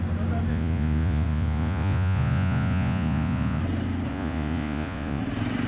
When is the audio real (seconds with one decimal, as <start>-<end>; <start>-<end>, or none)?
0.0-0.5; 3.6-4.1; 5.2-5.7